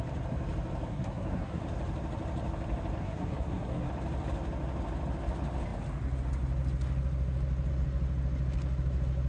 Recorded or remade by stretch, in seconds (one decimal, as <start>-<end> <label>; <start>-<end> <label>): 0.0-0.9 recorded; 0.9-1.6 remade; 1.6-3.0 recorded; 3.0-3.9 remade; 3.9-9.3 recorded